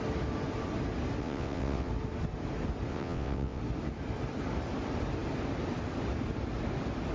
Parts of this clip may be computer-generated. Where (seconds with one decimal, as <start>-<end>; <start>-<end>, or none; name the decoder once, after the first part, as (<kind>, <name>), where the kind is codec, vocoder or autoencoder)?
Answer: 1.2-1.9 (vocoder, WaveNeXt); 2.9-3.6